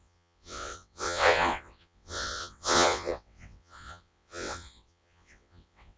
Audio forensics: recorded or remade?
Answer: remade